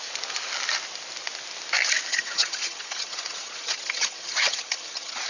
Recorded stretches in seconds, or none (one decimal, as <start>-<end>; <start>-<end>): 0.0-2.1

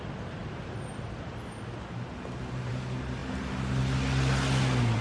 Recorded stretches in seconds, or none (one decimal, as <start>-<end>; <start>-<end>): 0.0-5.0